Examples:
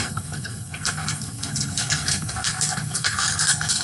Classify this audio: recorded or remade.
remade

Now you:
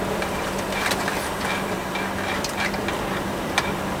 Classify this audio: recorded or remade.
remade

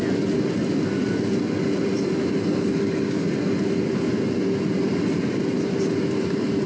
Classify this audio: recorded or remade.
recorded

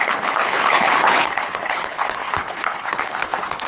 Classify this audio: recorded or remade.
remade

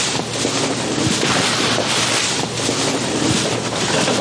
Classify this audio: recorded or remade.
recorded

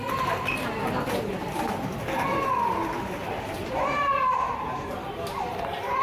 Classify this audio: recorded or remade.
recorded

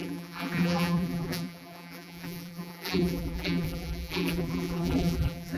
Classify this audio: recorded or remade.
remade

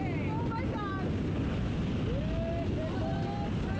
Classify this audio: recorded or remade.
recorded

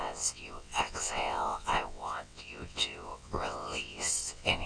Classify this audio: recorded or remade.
remade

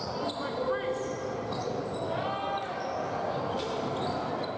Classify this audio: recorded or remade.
recorded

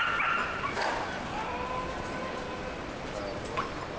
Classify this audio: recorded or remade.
recorded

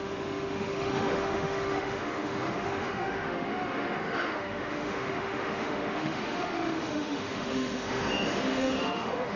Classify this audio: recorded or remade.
remade